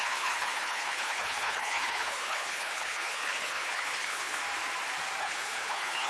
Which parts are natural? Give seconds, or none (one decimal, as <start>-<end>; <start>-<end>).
4.4-5.2